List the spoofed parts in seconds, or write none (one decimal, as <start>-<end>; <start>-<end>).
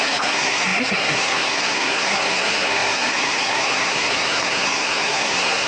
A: 0.0-5.7